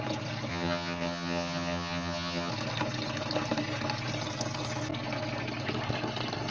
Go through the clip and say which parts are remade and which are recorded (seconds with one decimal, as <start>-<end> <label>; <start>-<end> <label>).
0.0-0.5 recorded; 0.5-2.5 remade; 2.5-6.5 recorded